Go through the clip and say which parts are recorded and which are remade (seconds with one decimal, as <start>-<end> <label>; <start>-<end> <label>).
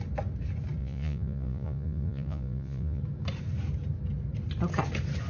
0.0-0.8 recorded; 0.8-3.0 remade; 3.0-5.3 recorded